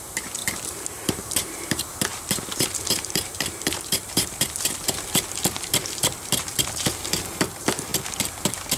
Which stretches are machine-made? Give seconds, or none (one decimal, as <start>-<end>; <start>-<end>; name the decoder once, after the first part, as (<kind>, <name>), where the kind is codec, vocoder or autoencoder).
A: 0.0-7.9 (vocoder, BigVGAN v2); 8.4-8.8